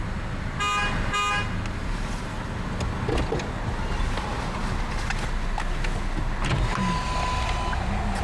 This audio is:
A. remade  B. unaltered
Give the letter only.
B